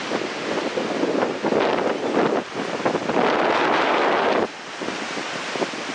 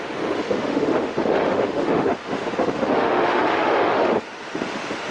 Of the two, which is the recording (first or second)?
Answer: first